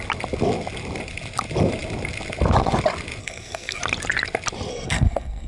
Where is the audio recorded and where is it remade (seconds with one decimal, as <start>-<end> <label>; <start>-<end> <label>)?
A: 0.0-3.2 recorded; 3.2-3.8 remade; 3.8-4.7 recorded; 4.7-5.5 remade